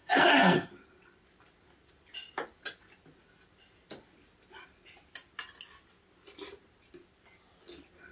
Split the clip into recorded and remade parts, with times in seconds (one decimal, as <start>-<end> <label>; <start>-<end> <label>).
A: 0.0-0.7 remade; 0.7-8.1 recorded